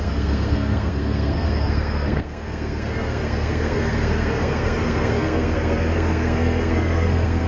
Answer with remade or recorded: remade